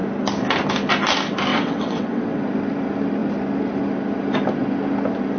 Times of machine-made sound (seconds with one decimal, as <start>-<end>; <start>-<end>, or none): 1.5-2.4